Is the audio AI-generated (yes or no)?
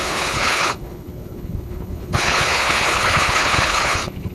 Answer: yes